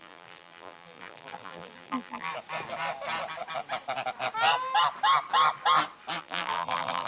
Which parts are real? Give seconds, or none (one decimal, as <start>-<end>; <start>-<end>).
2.3-6.2